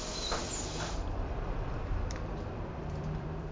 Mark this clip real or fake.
fake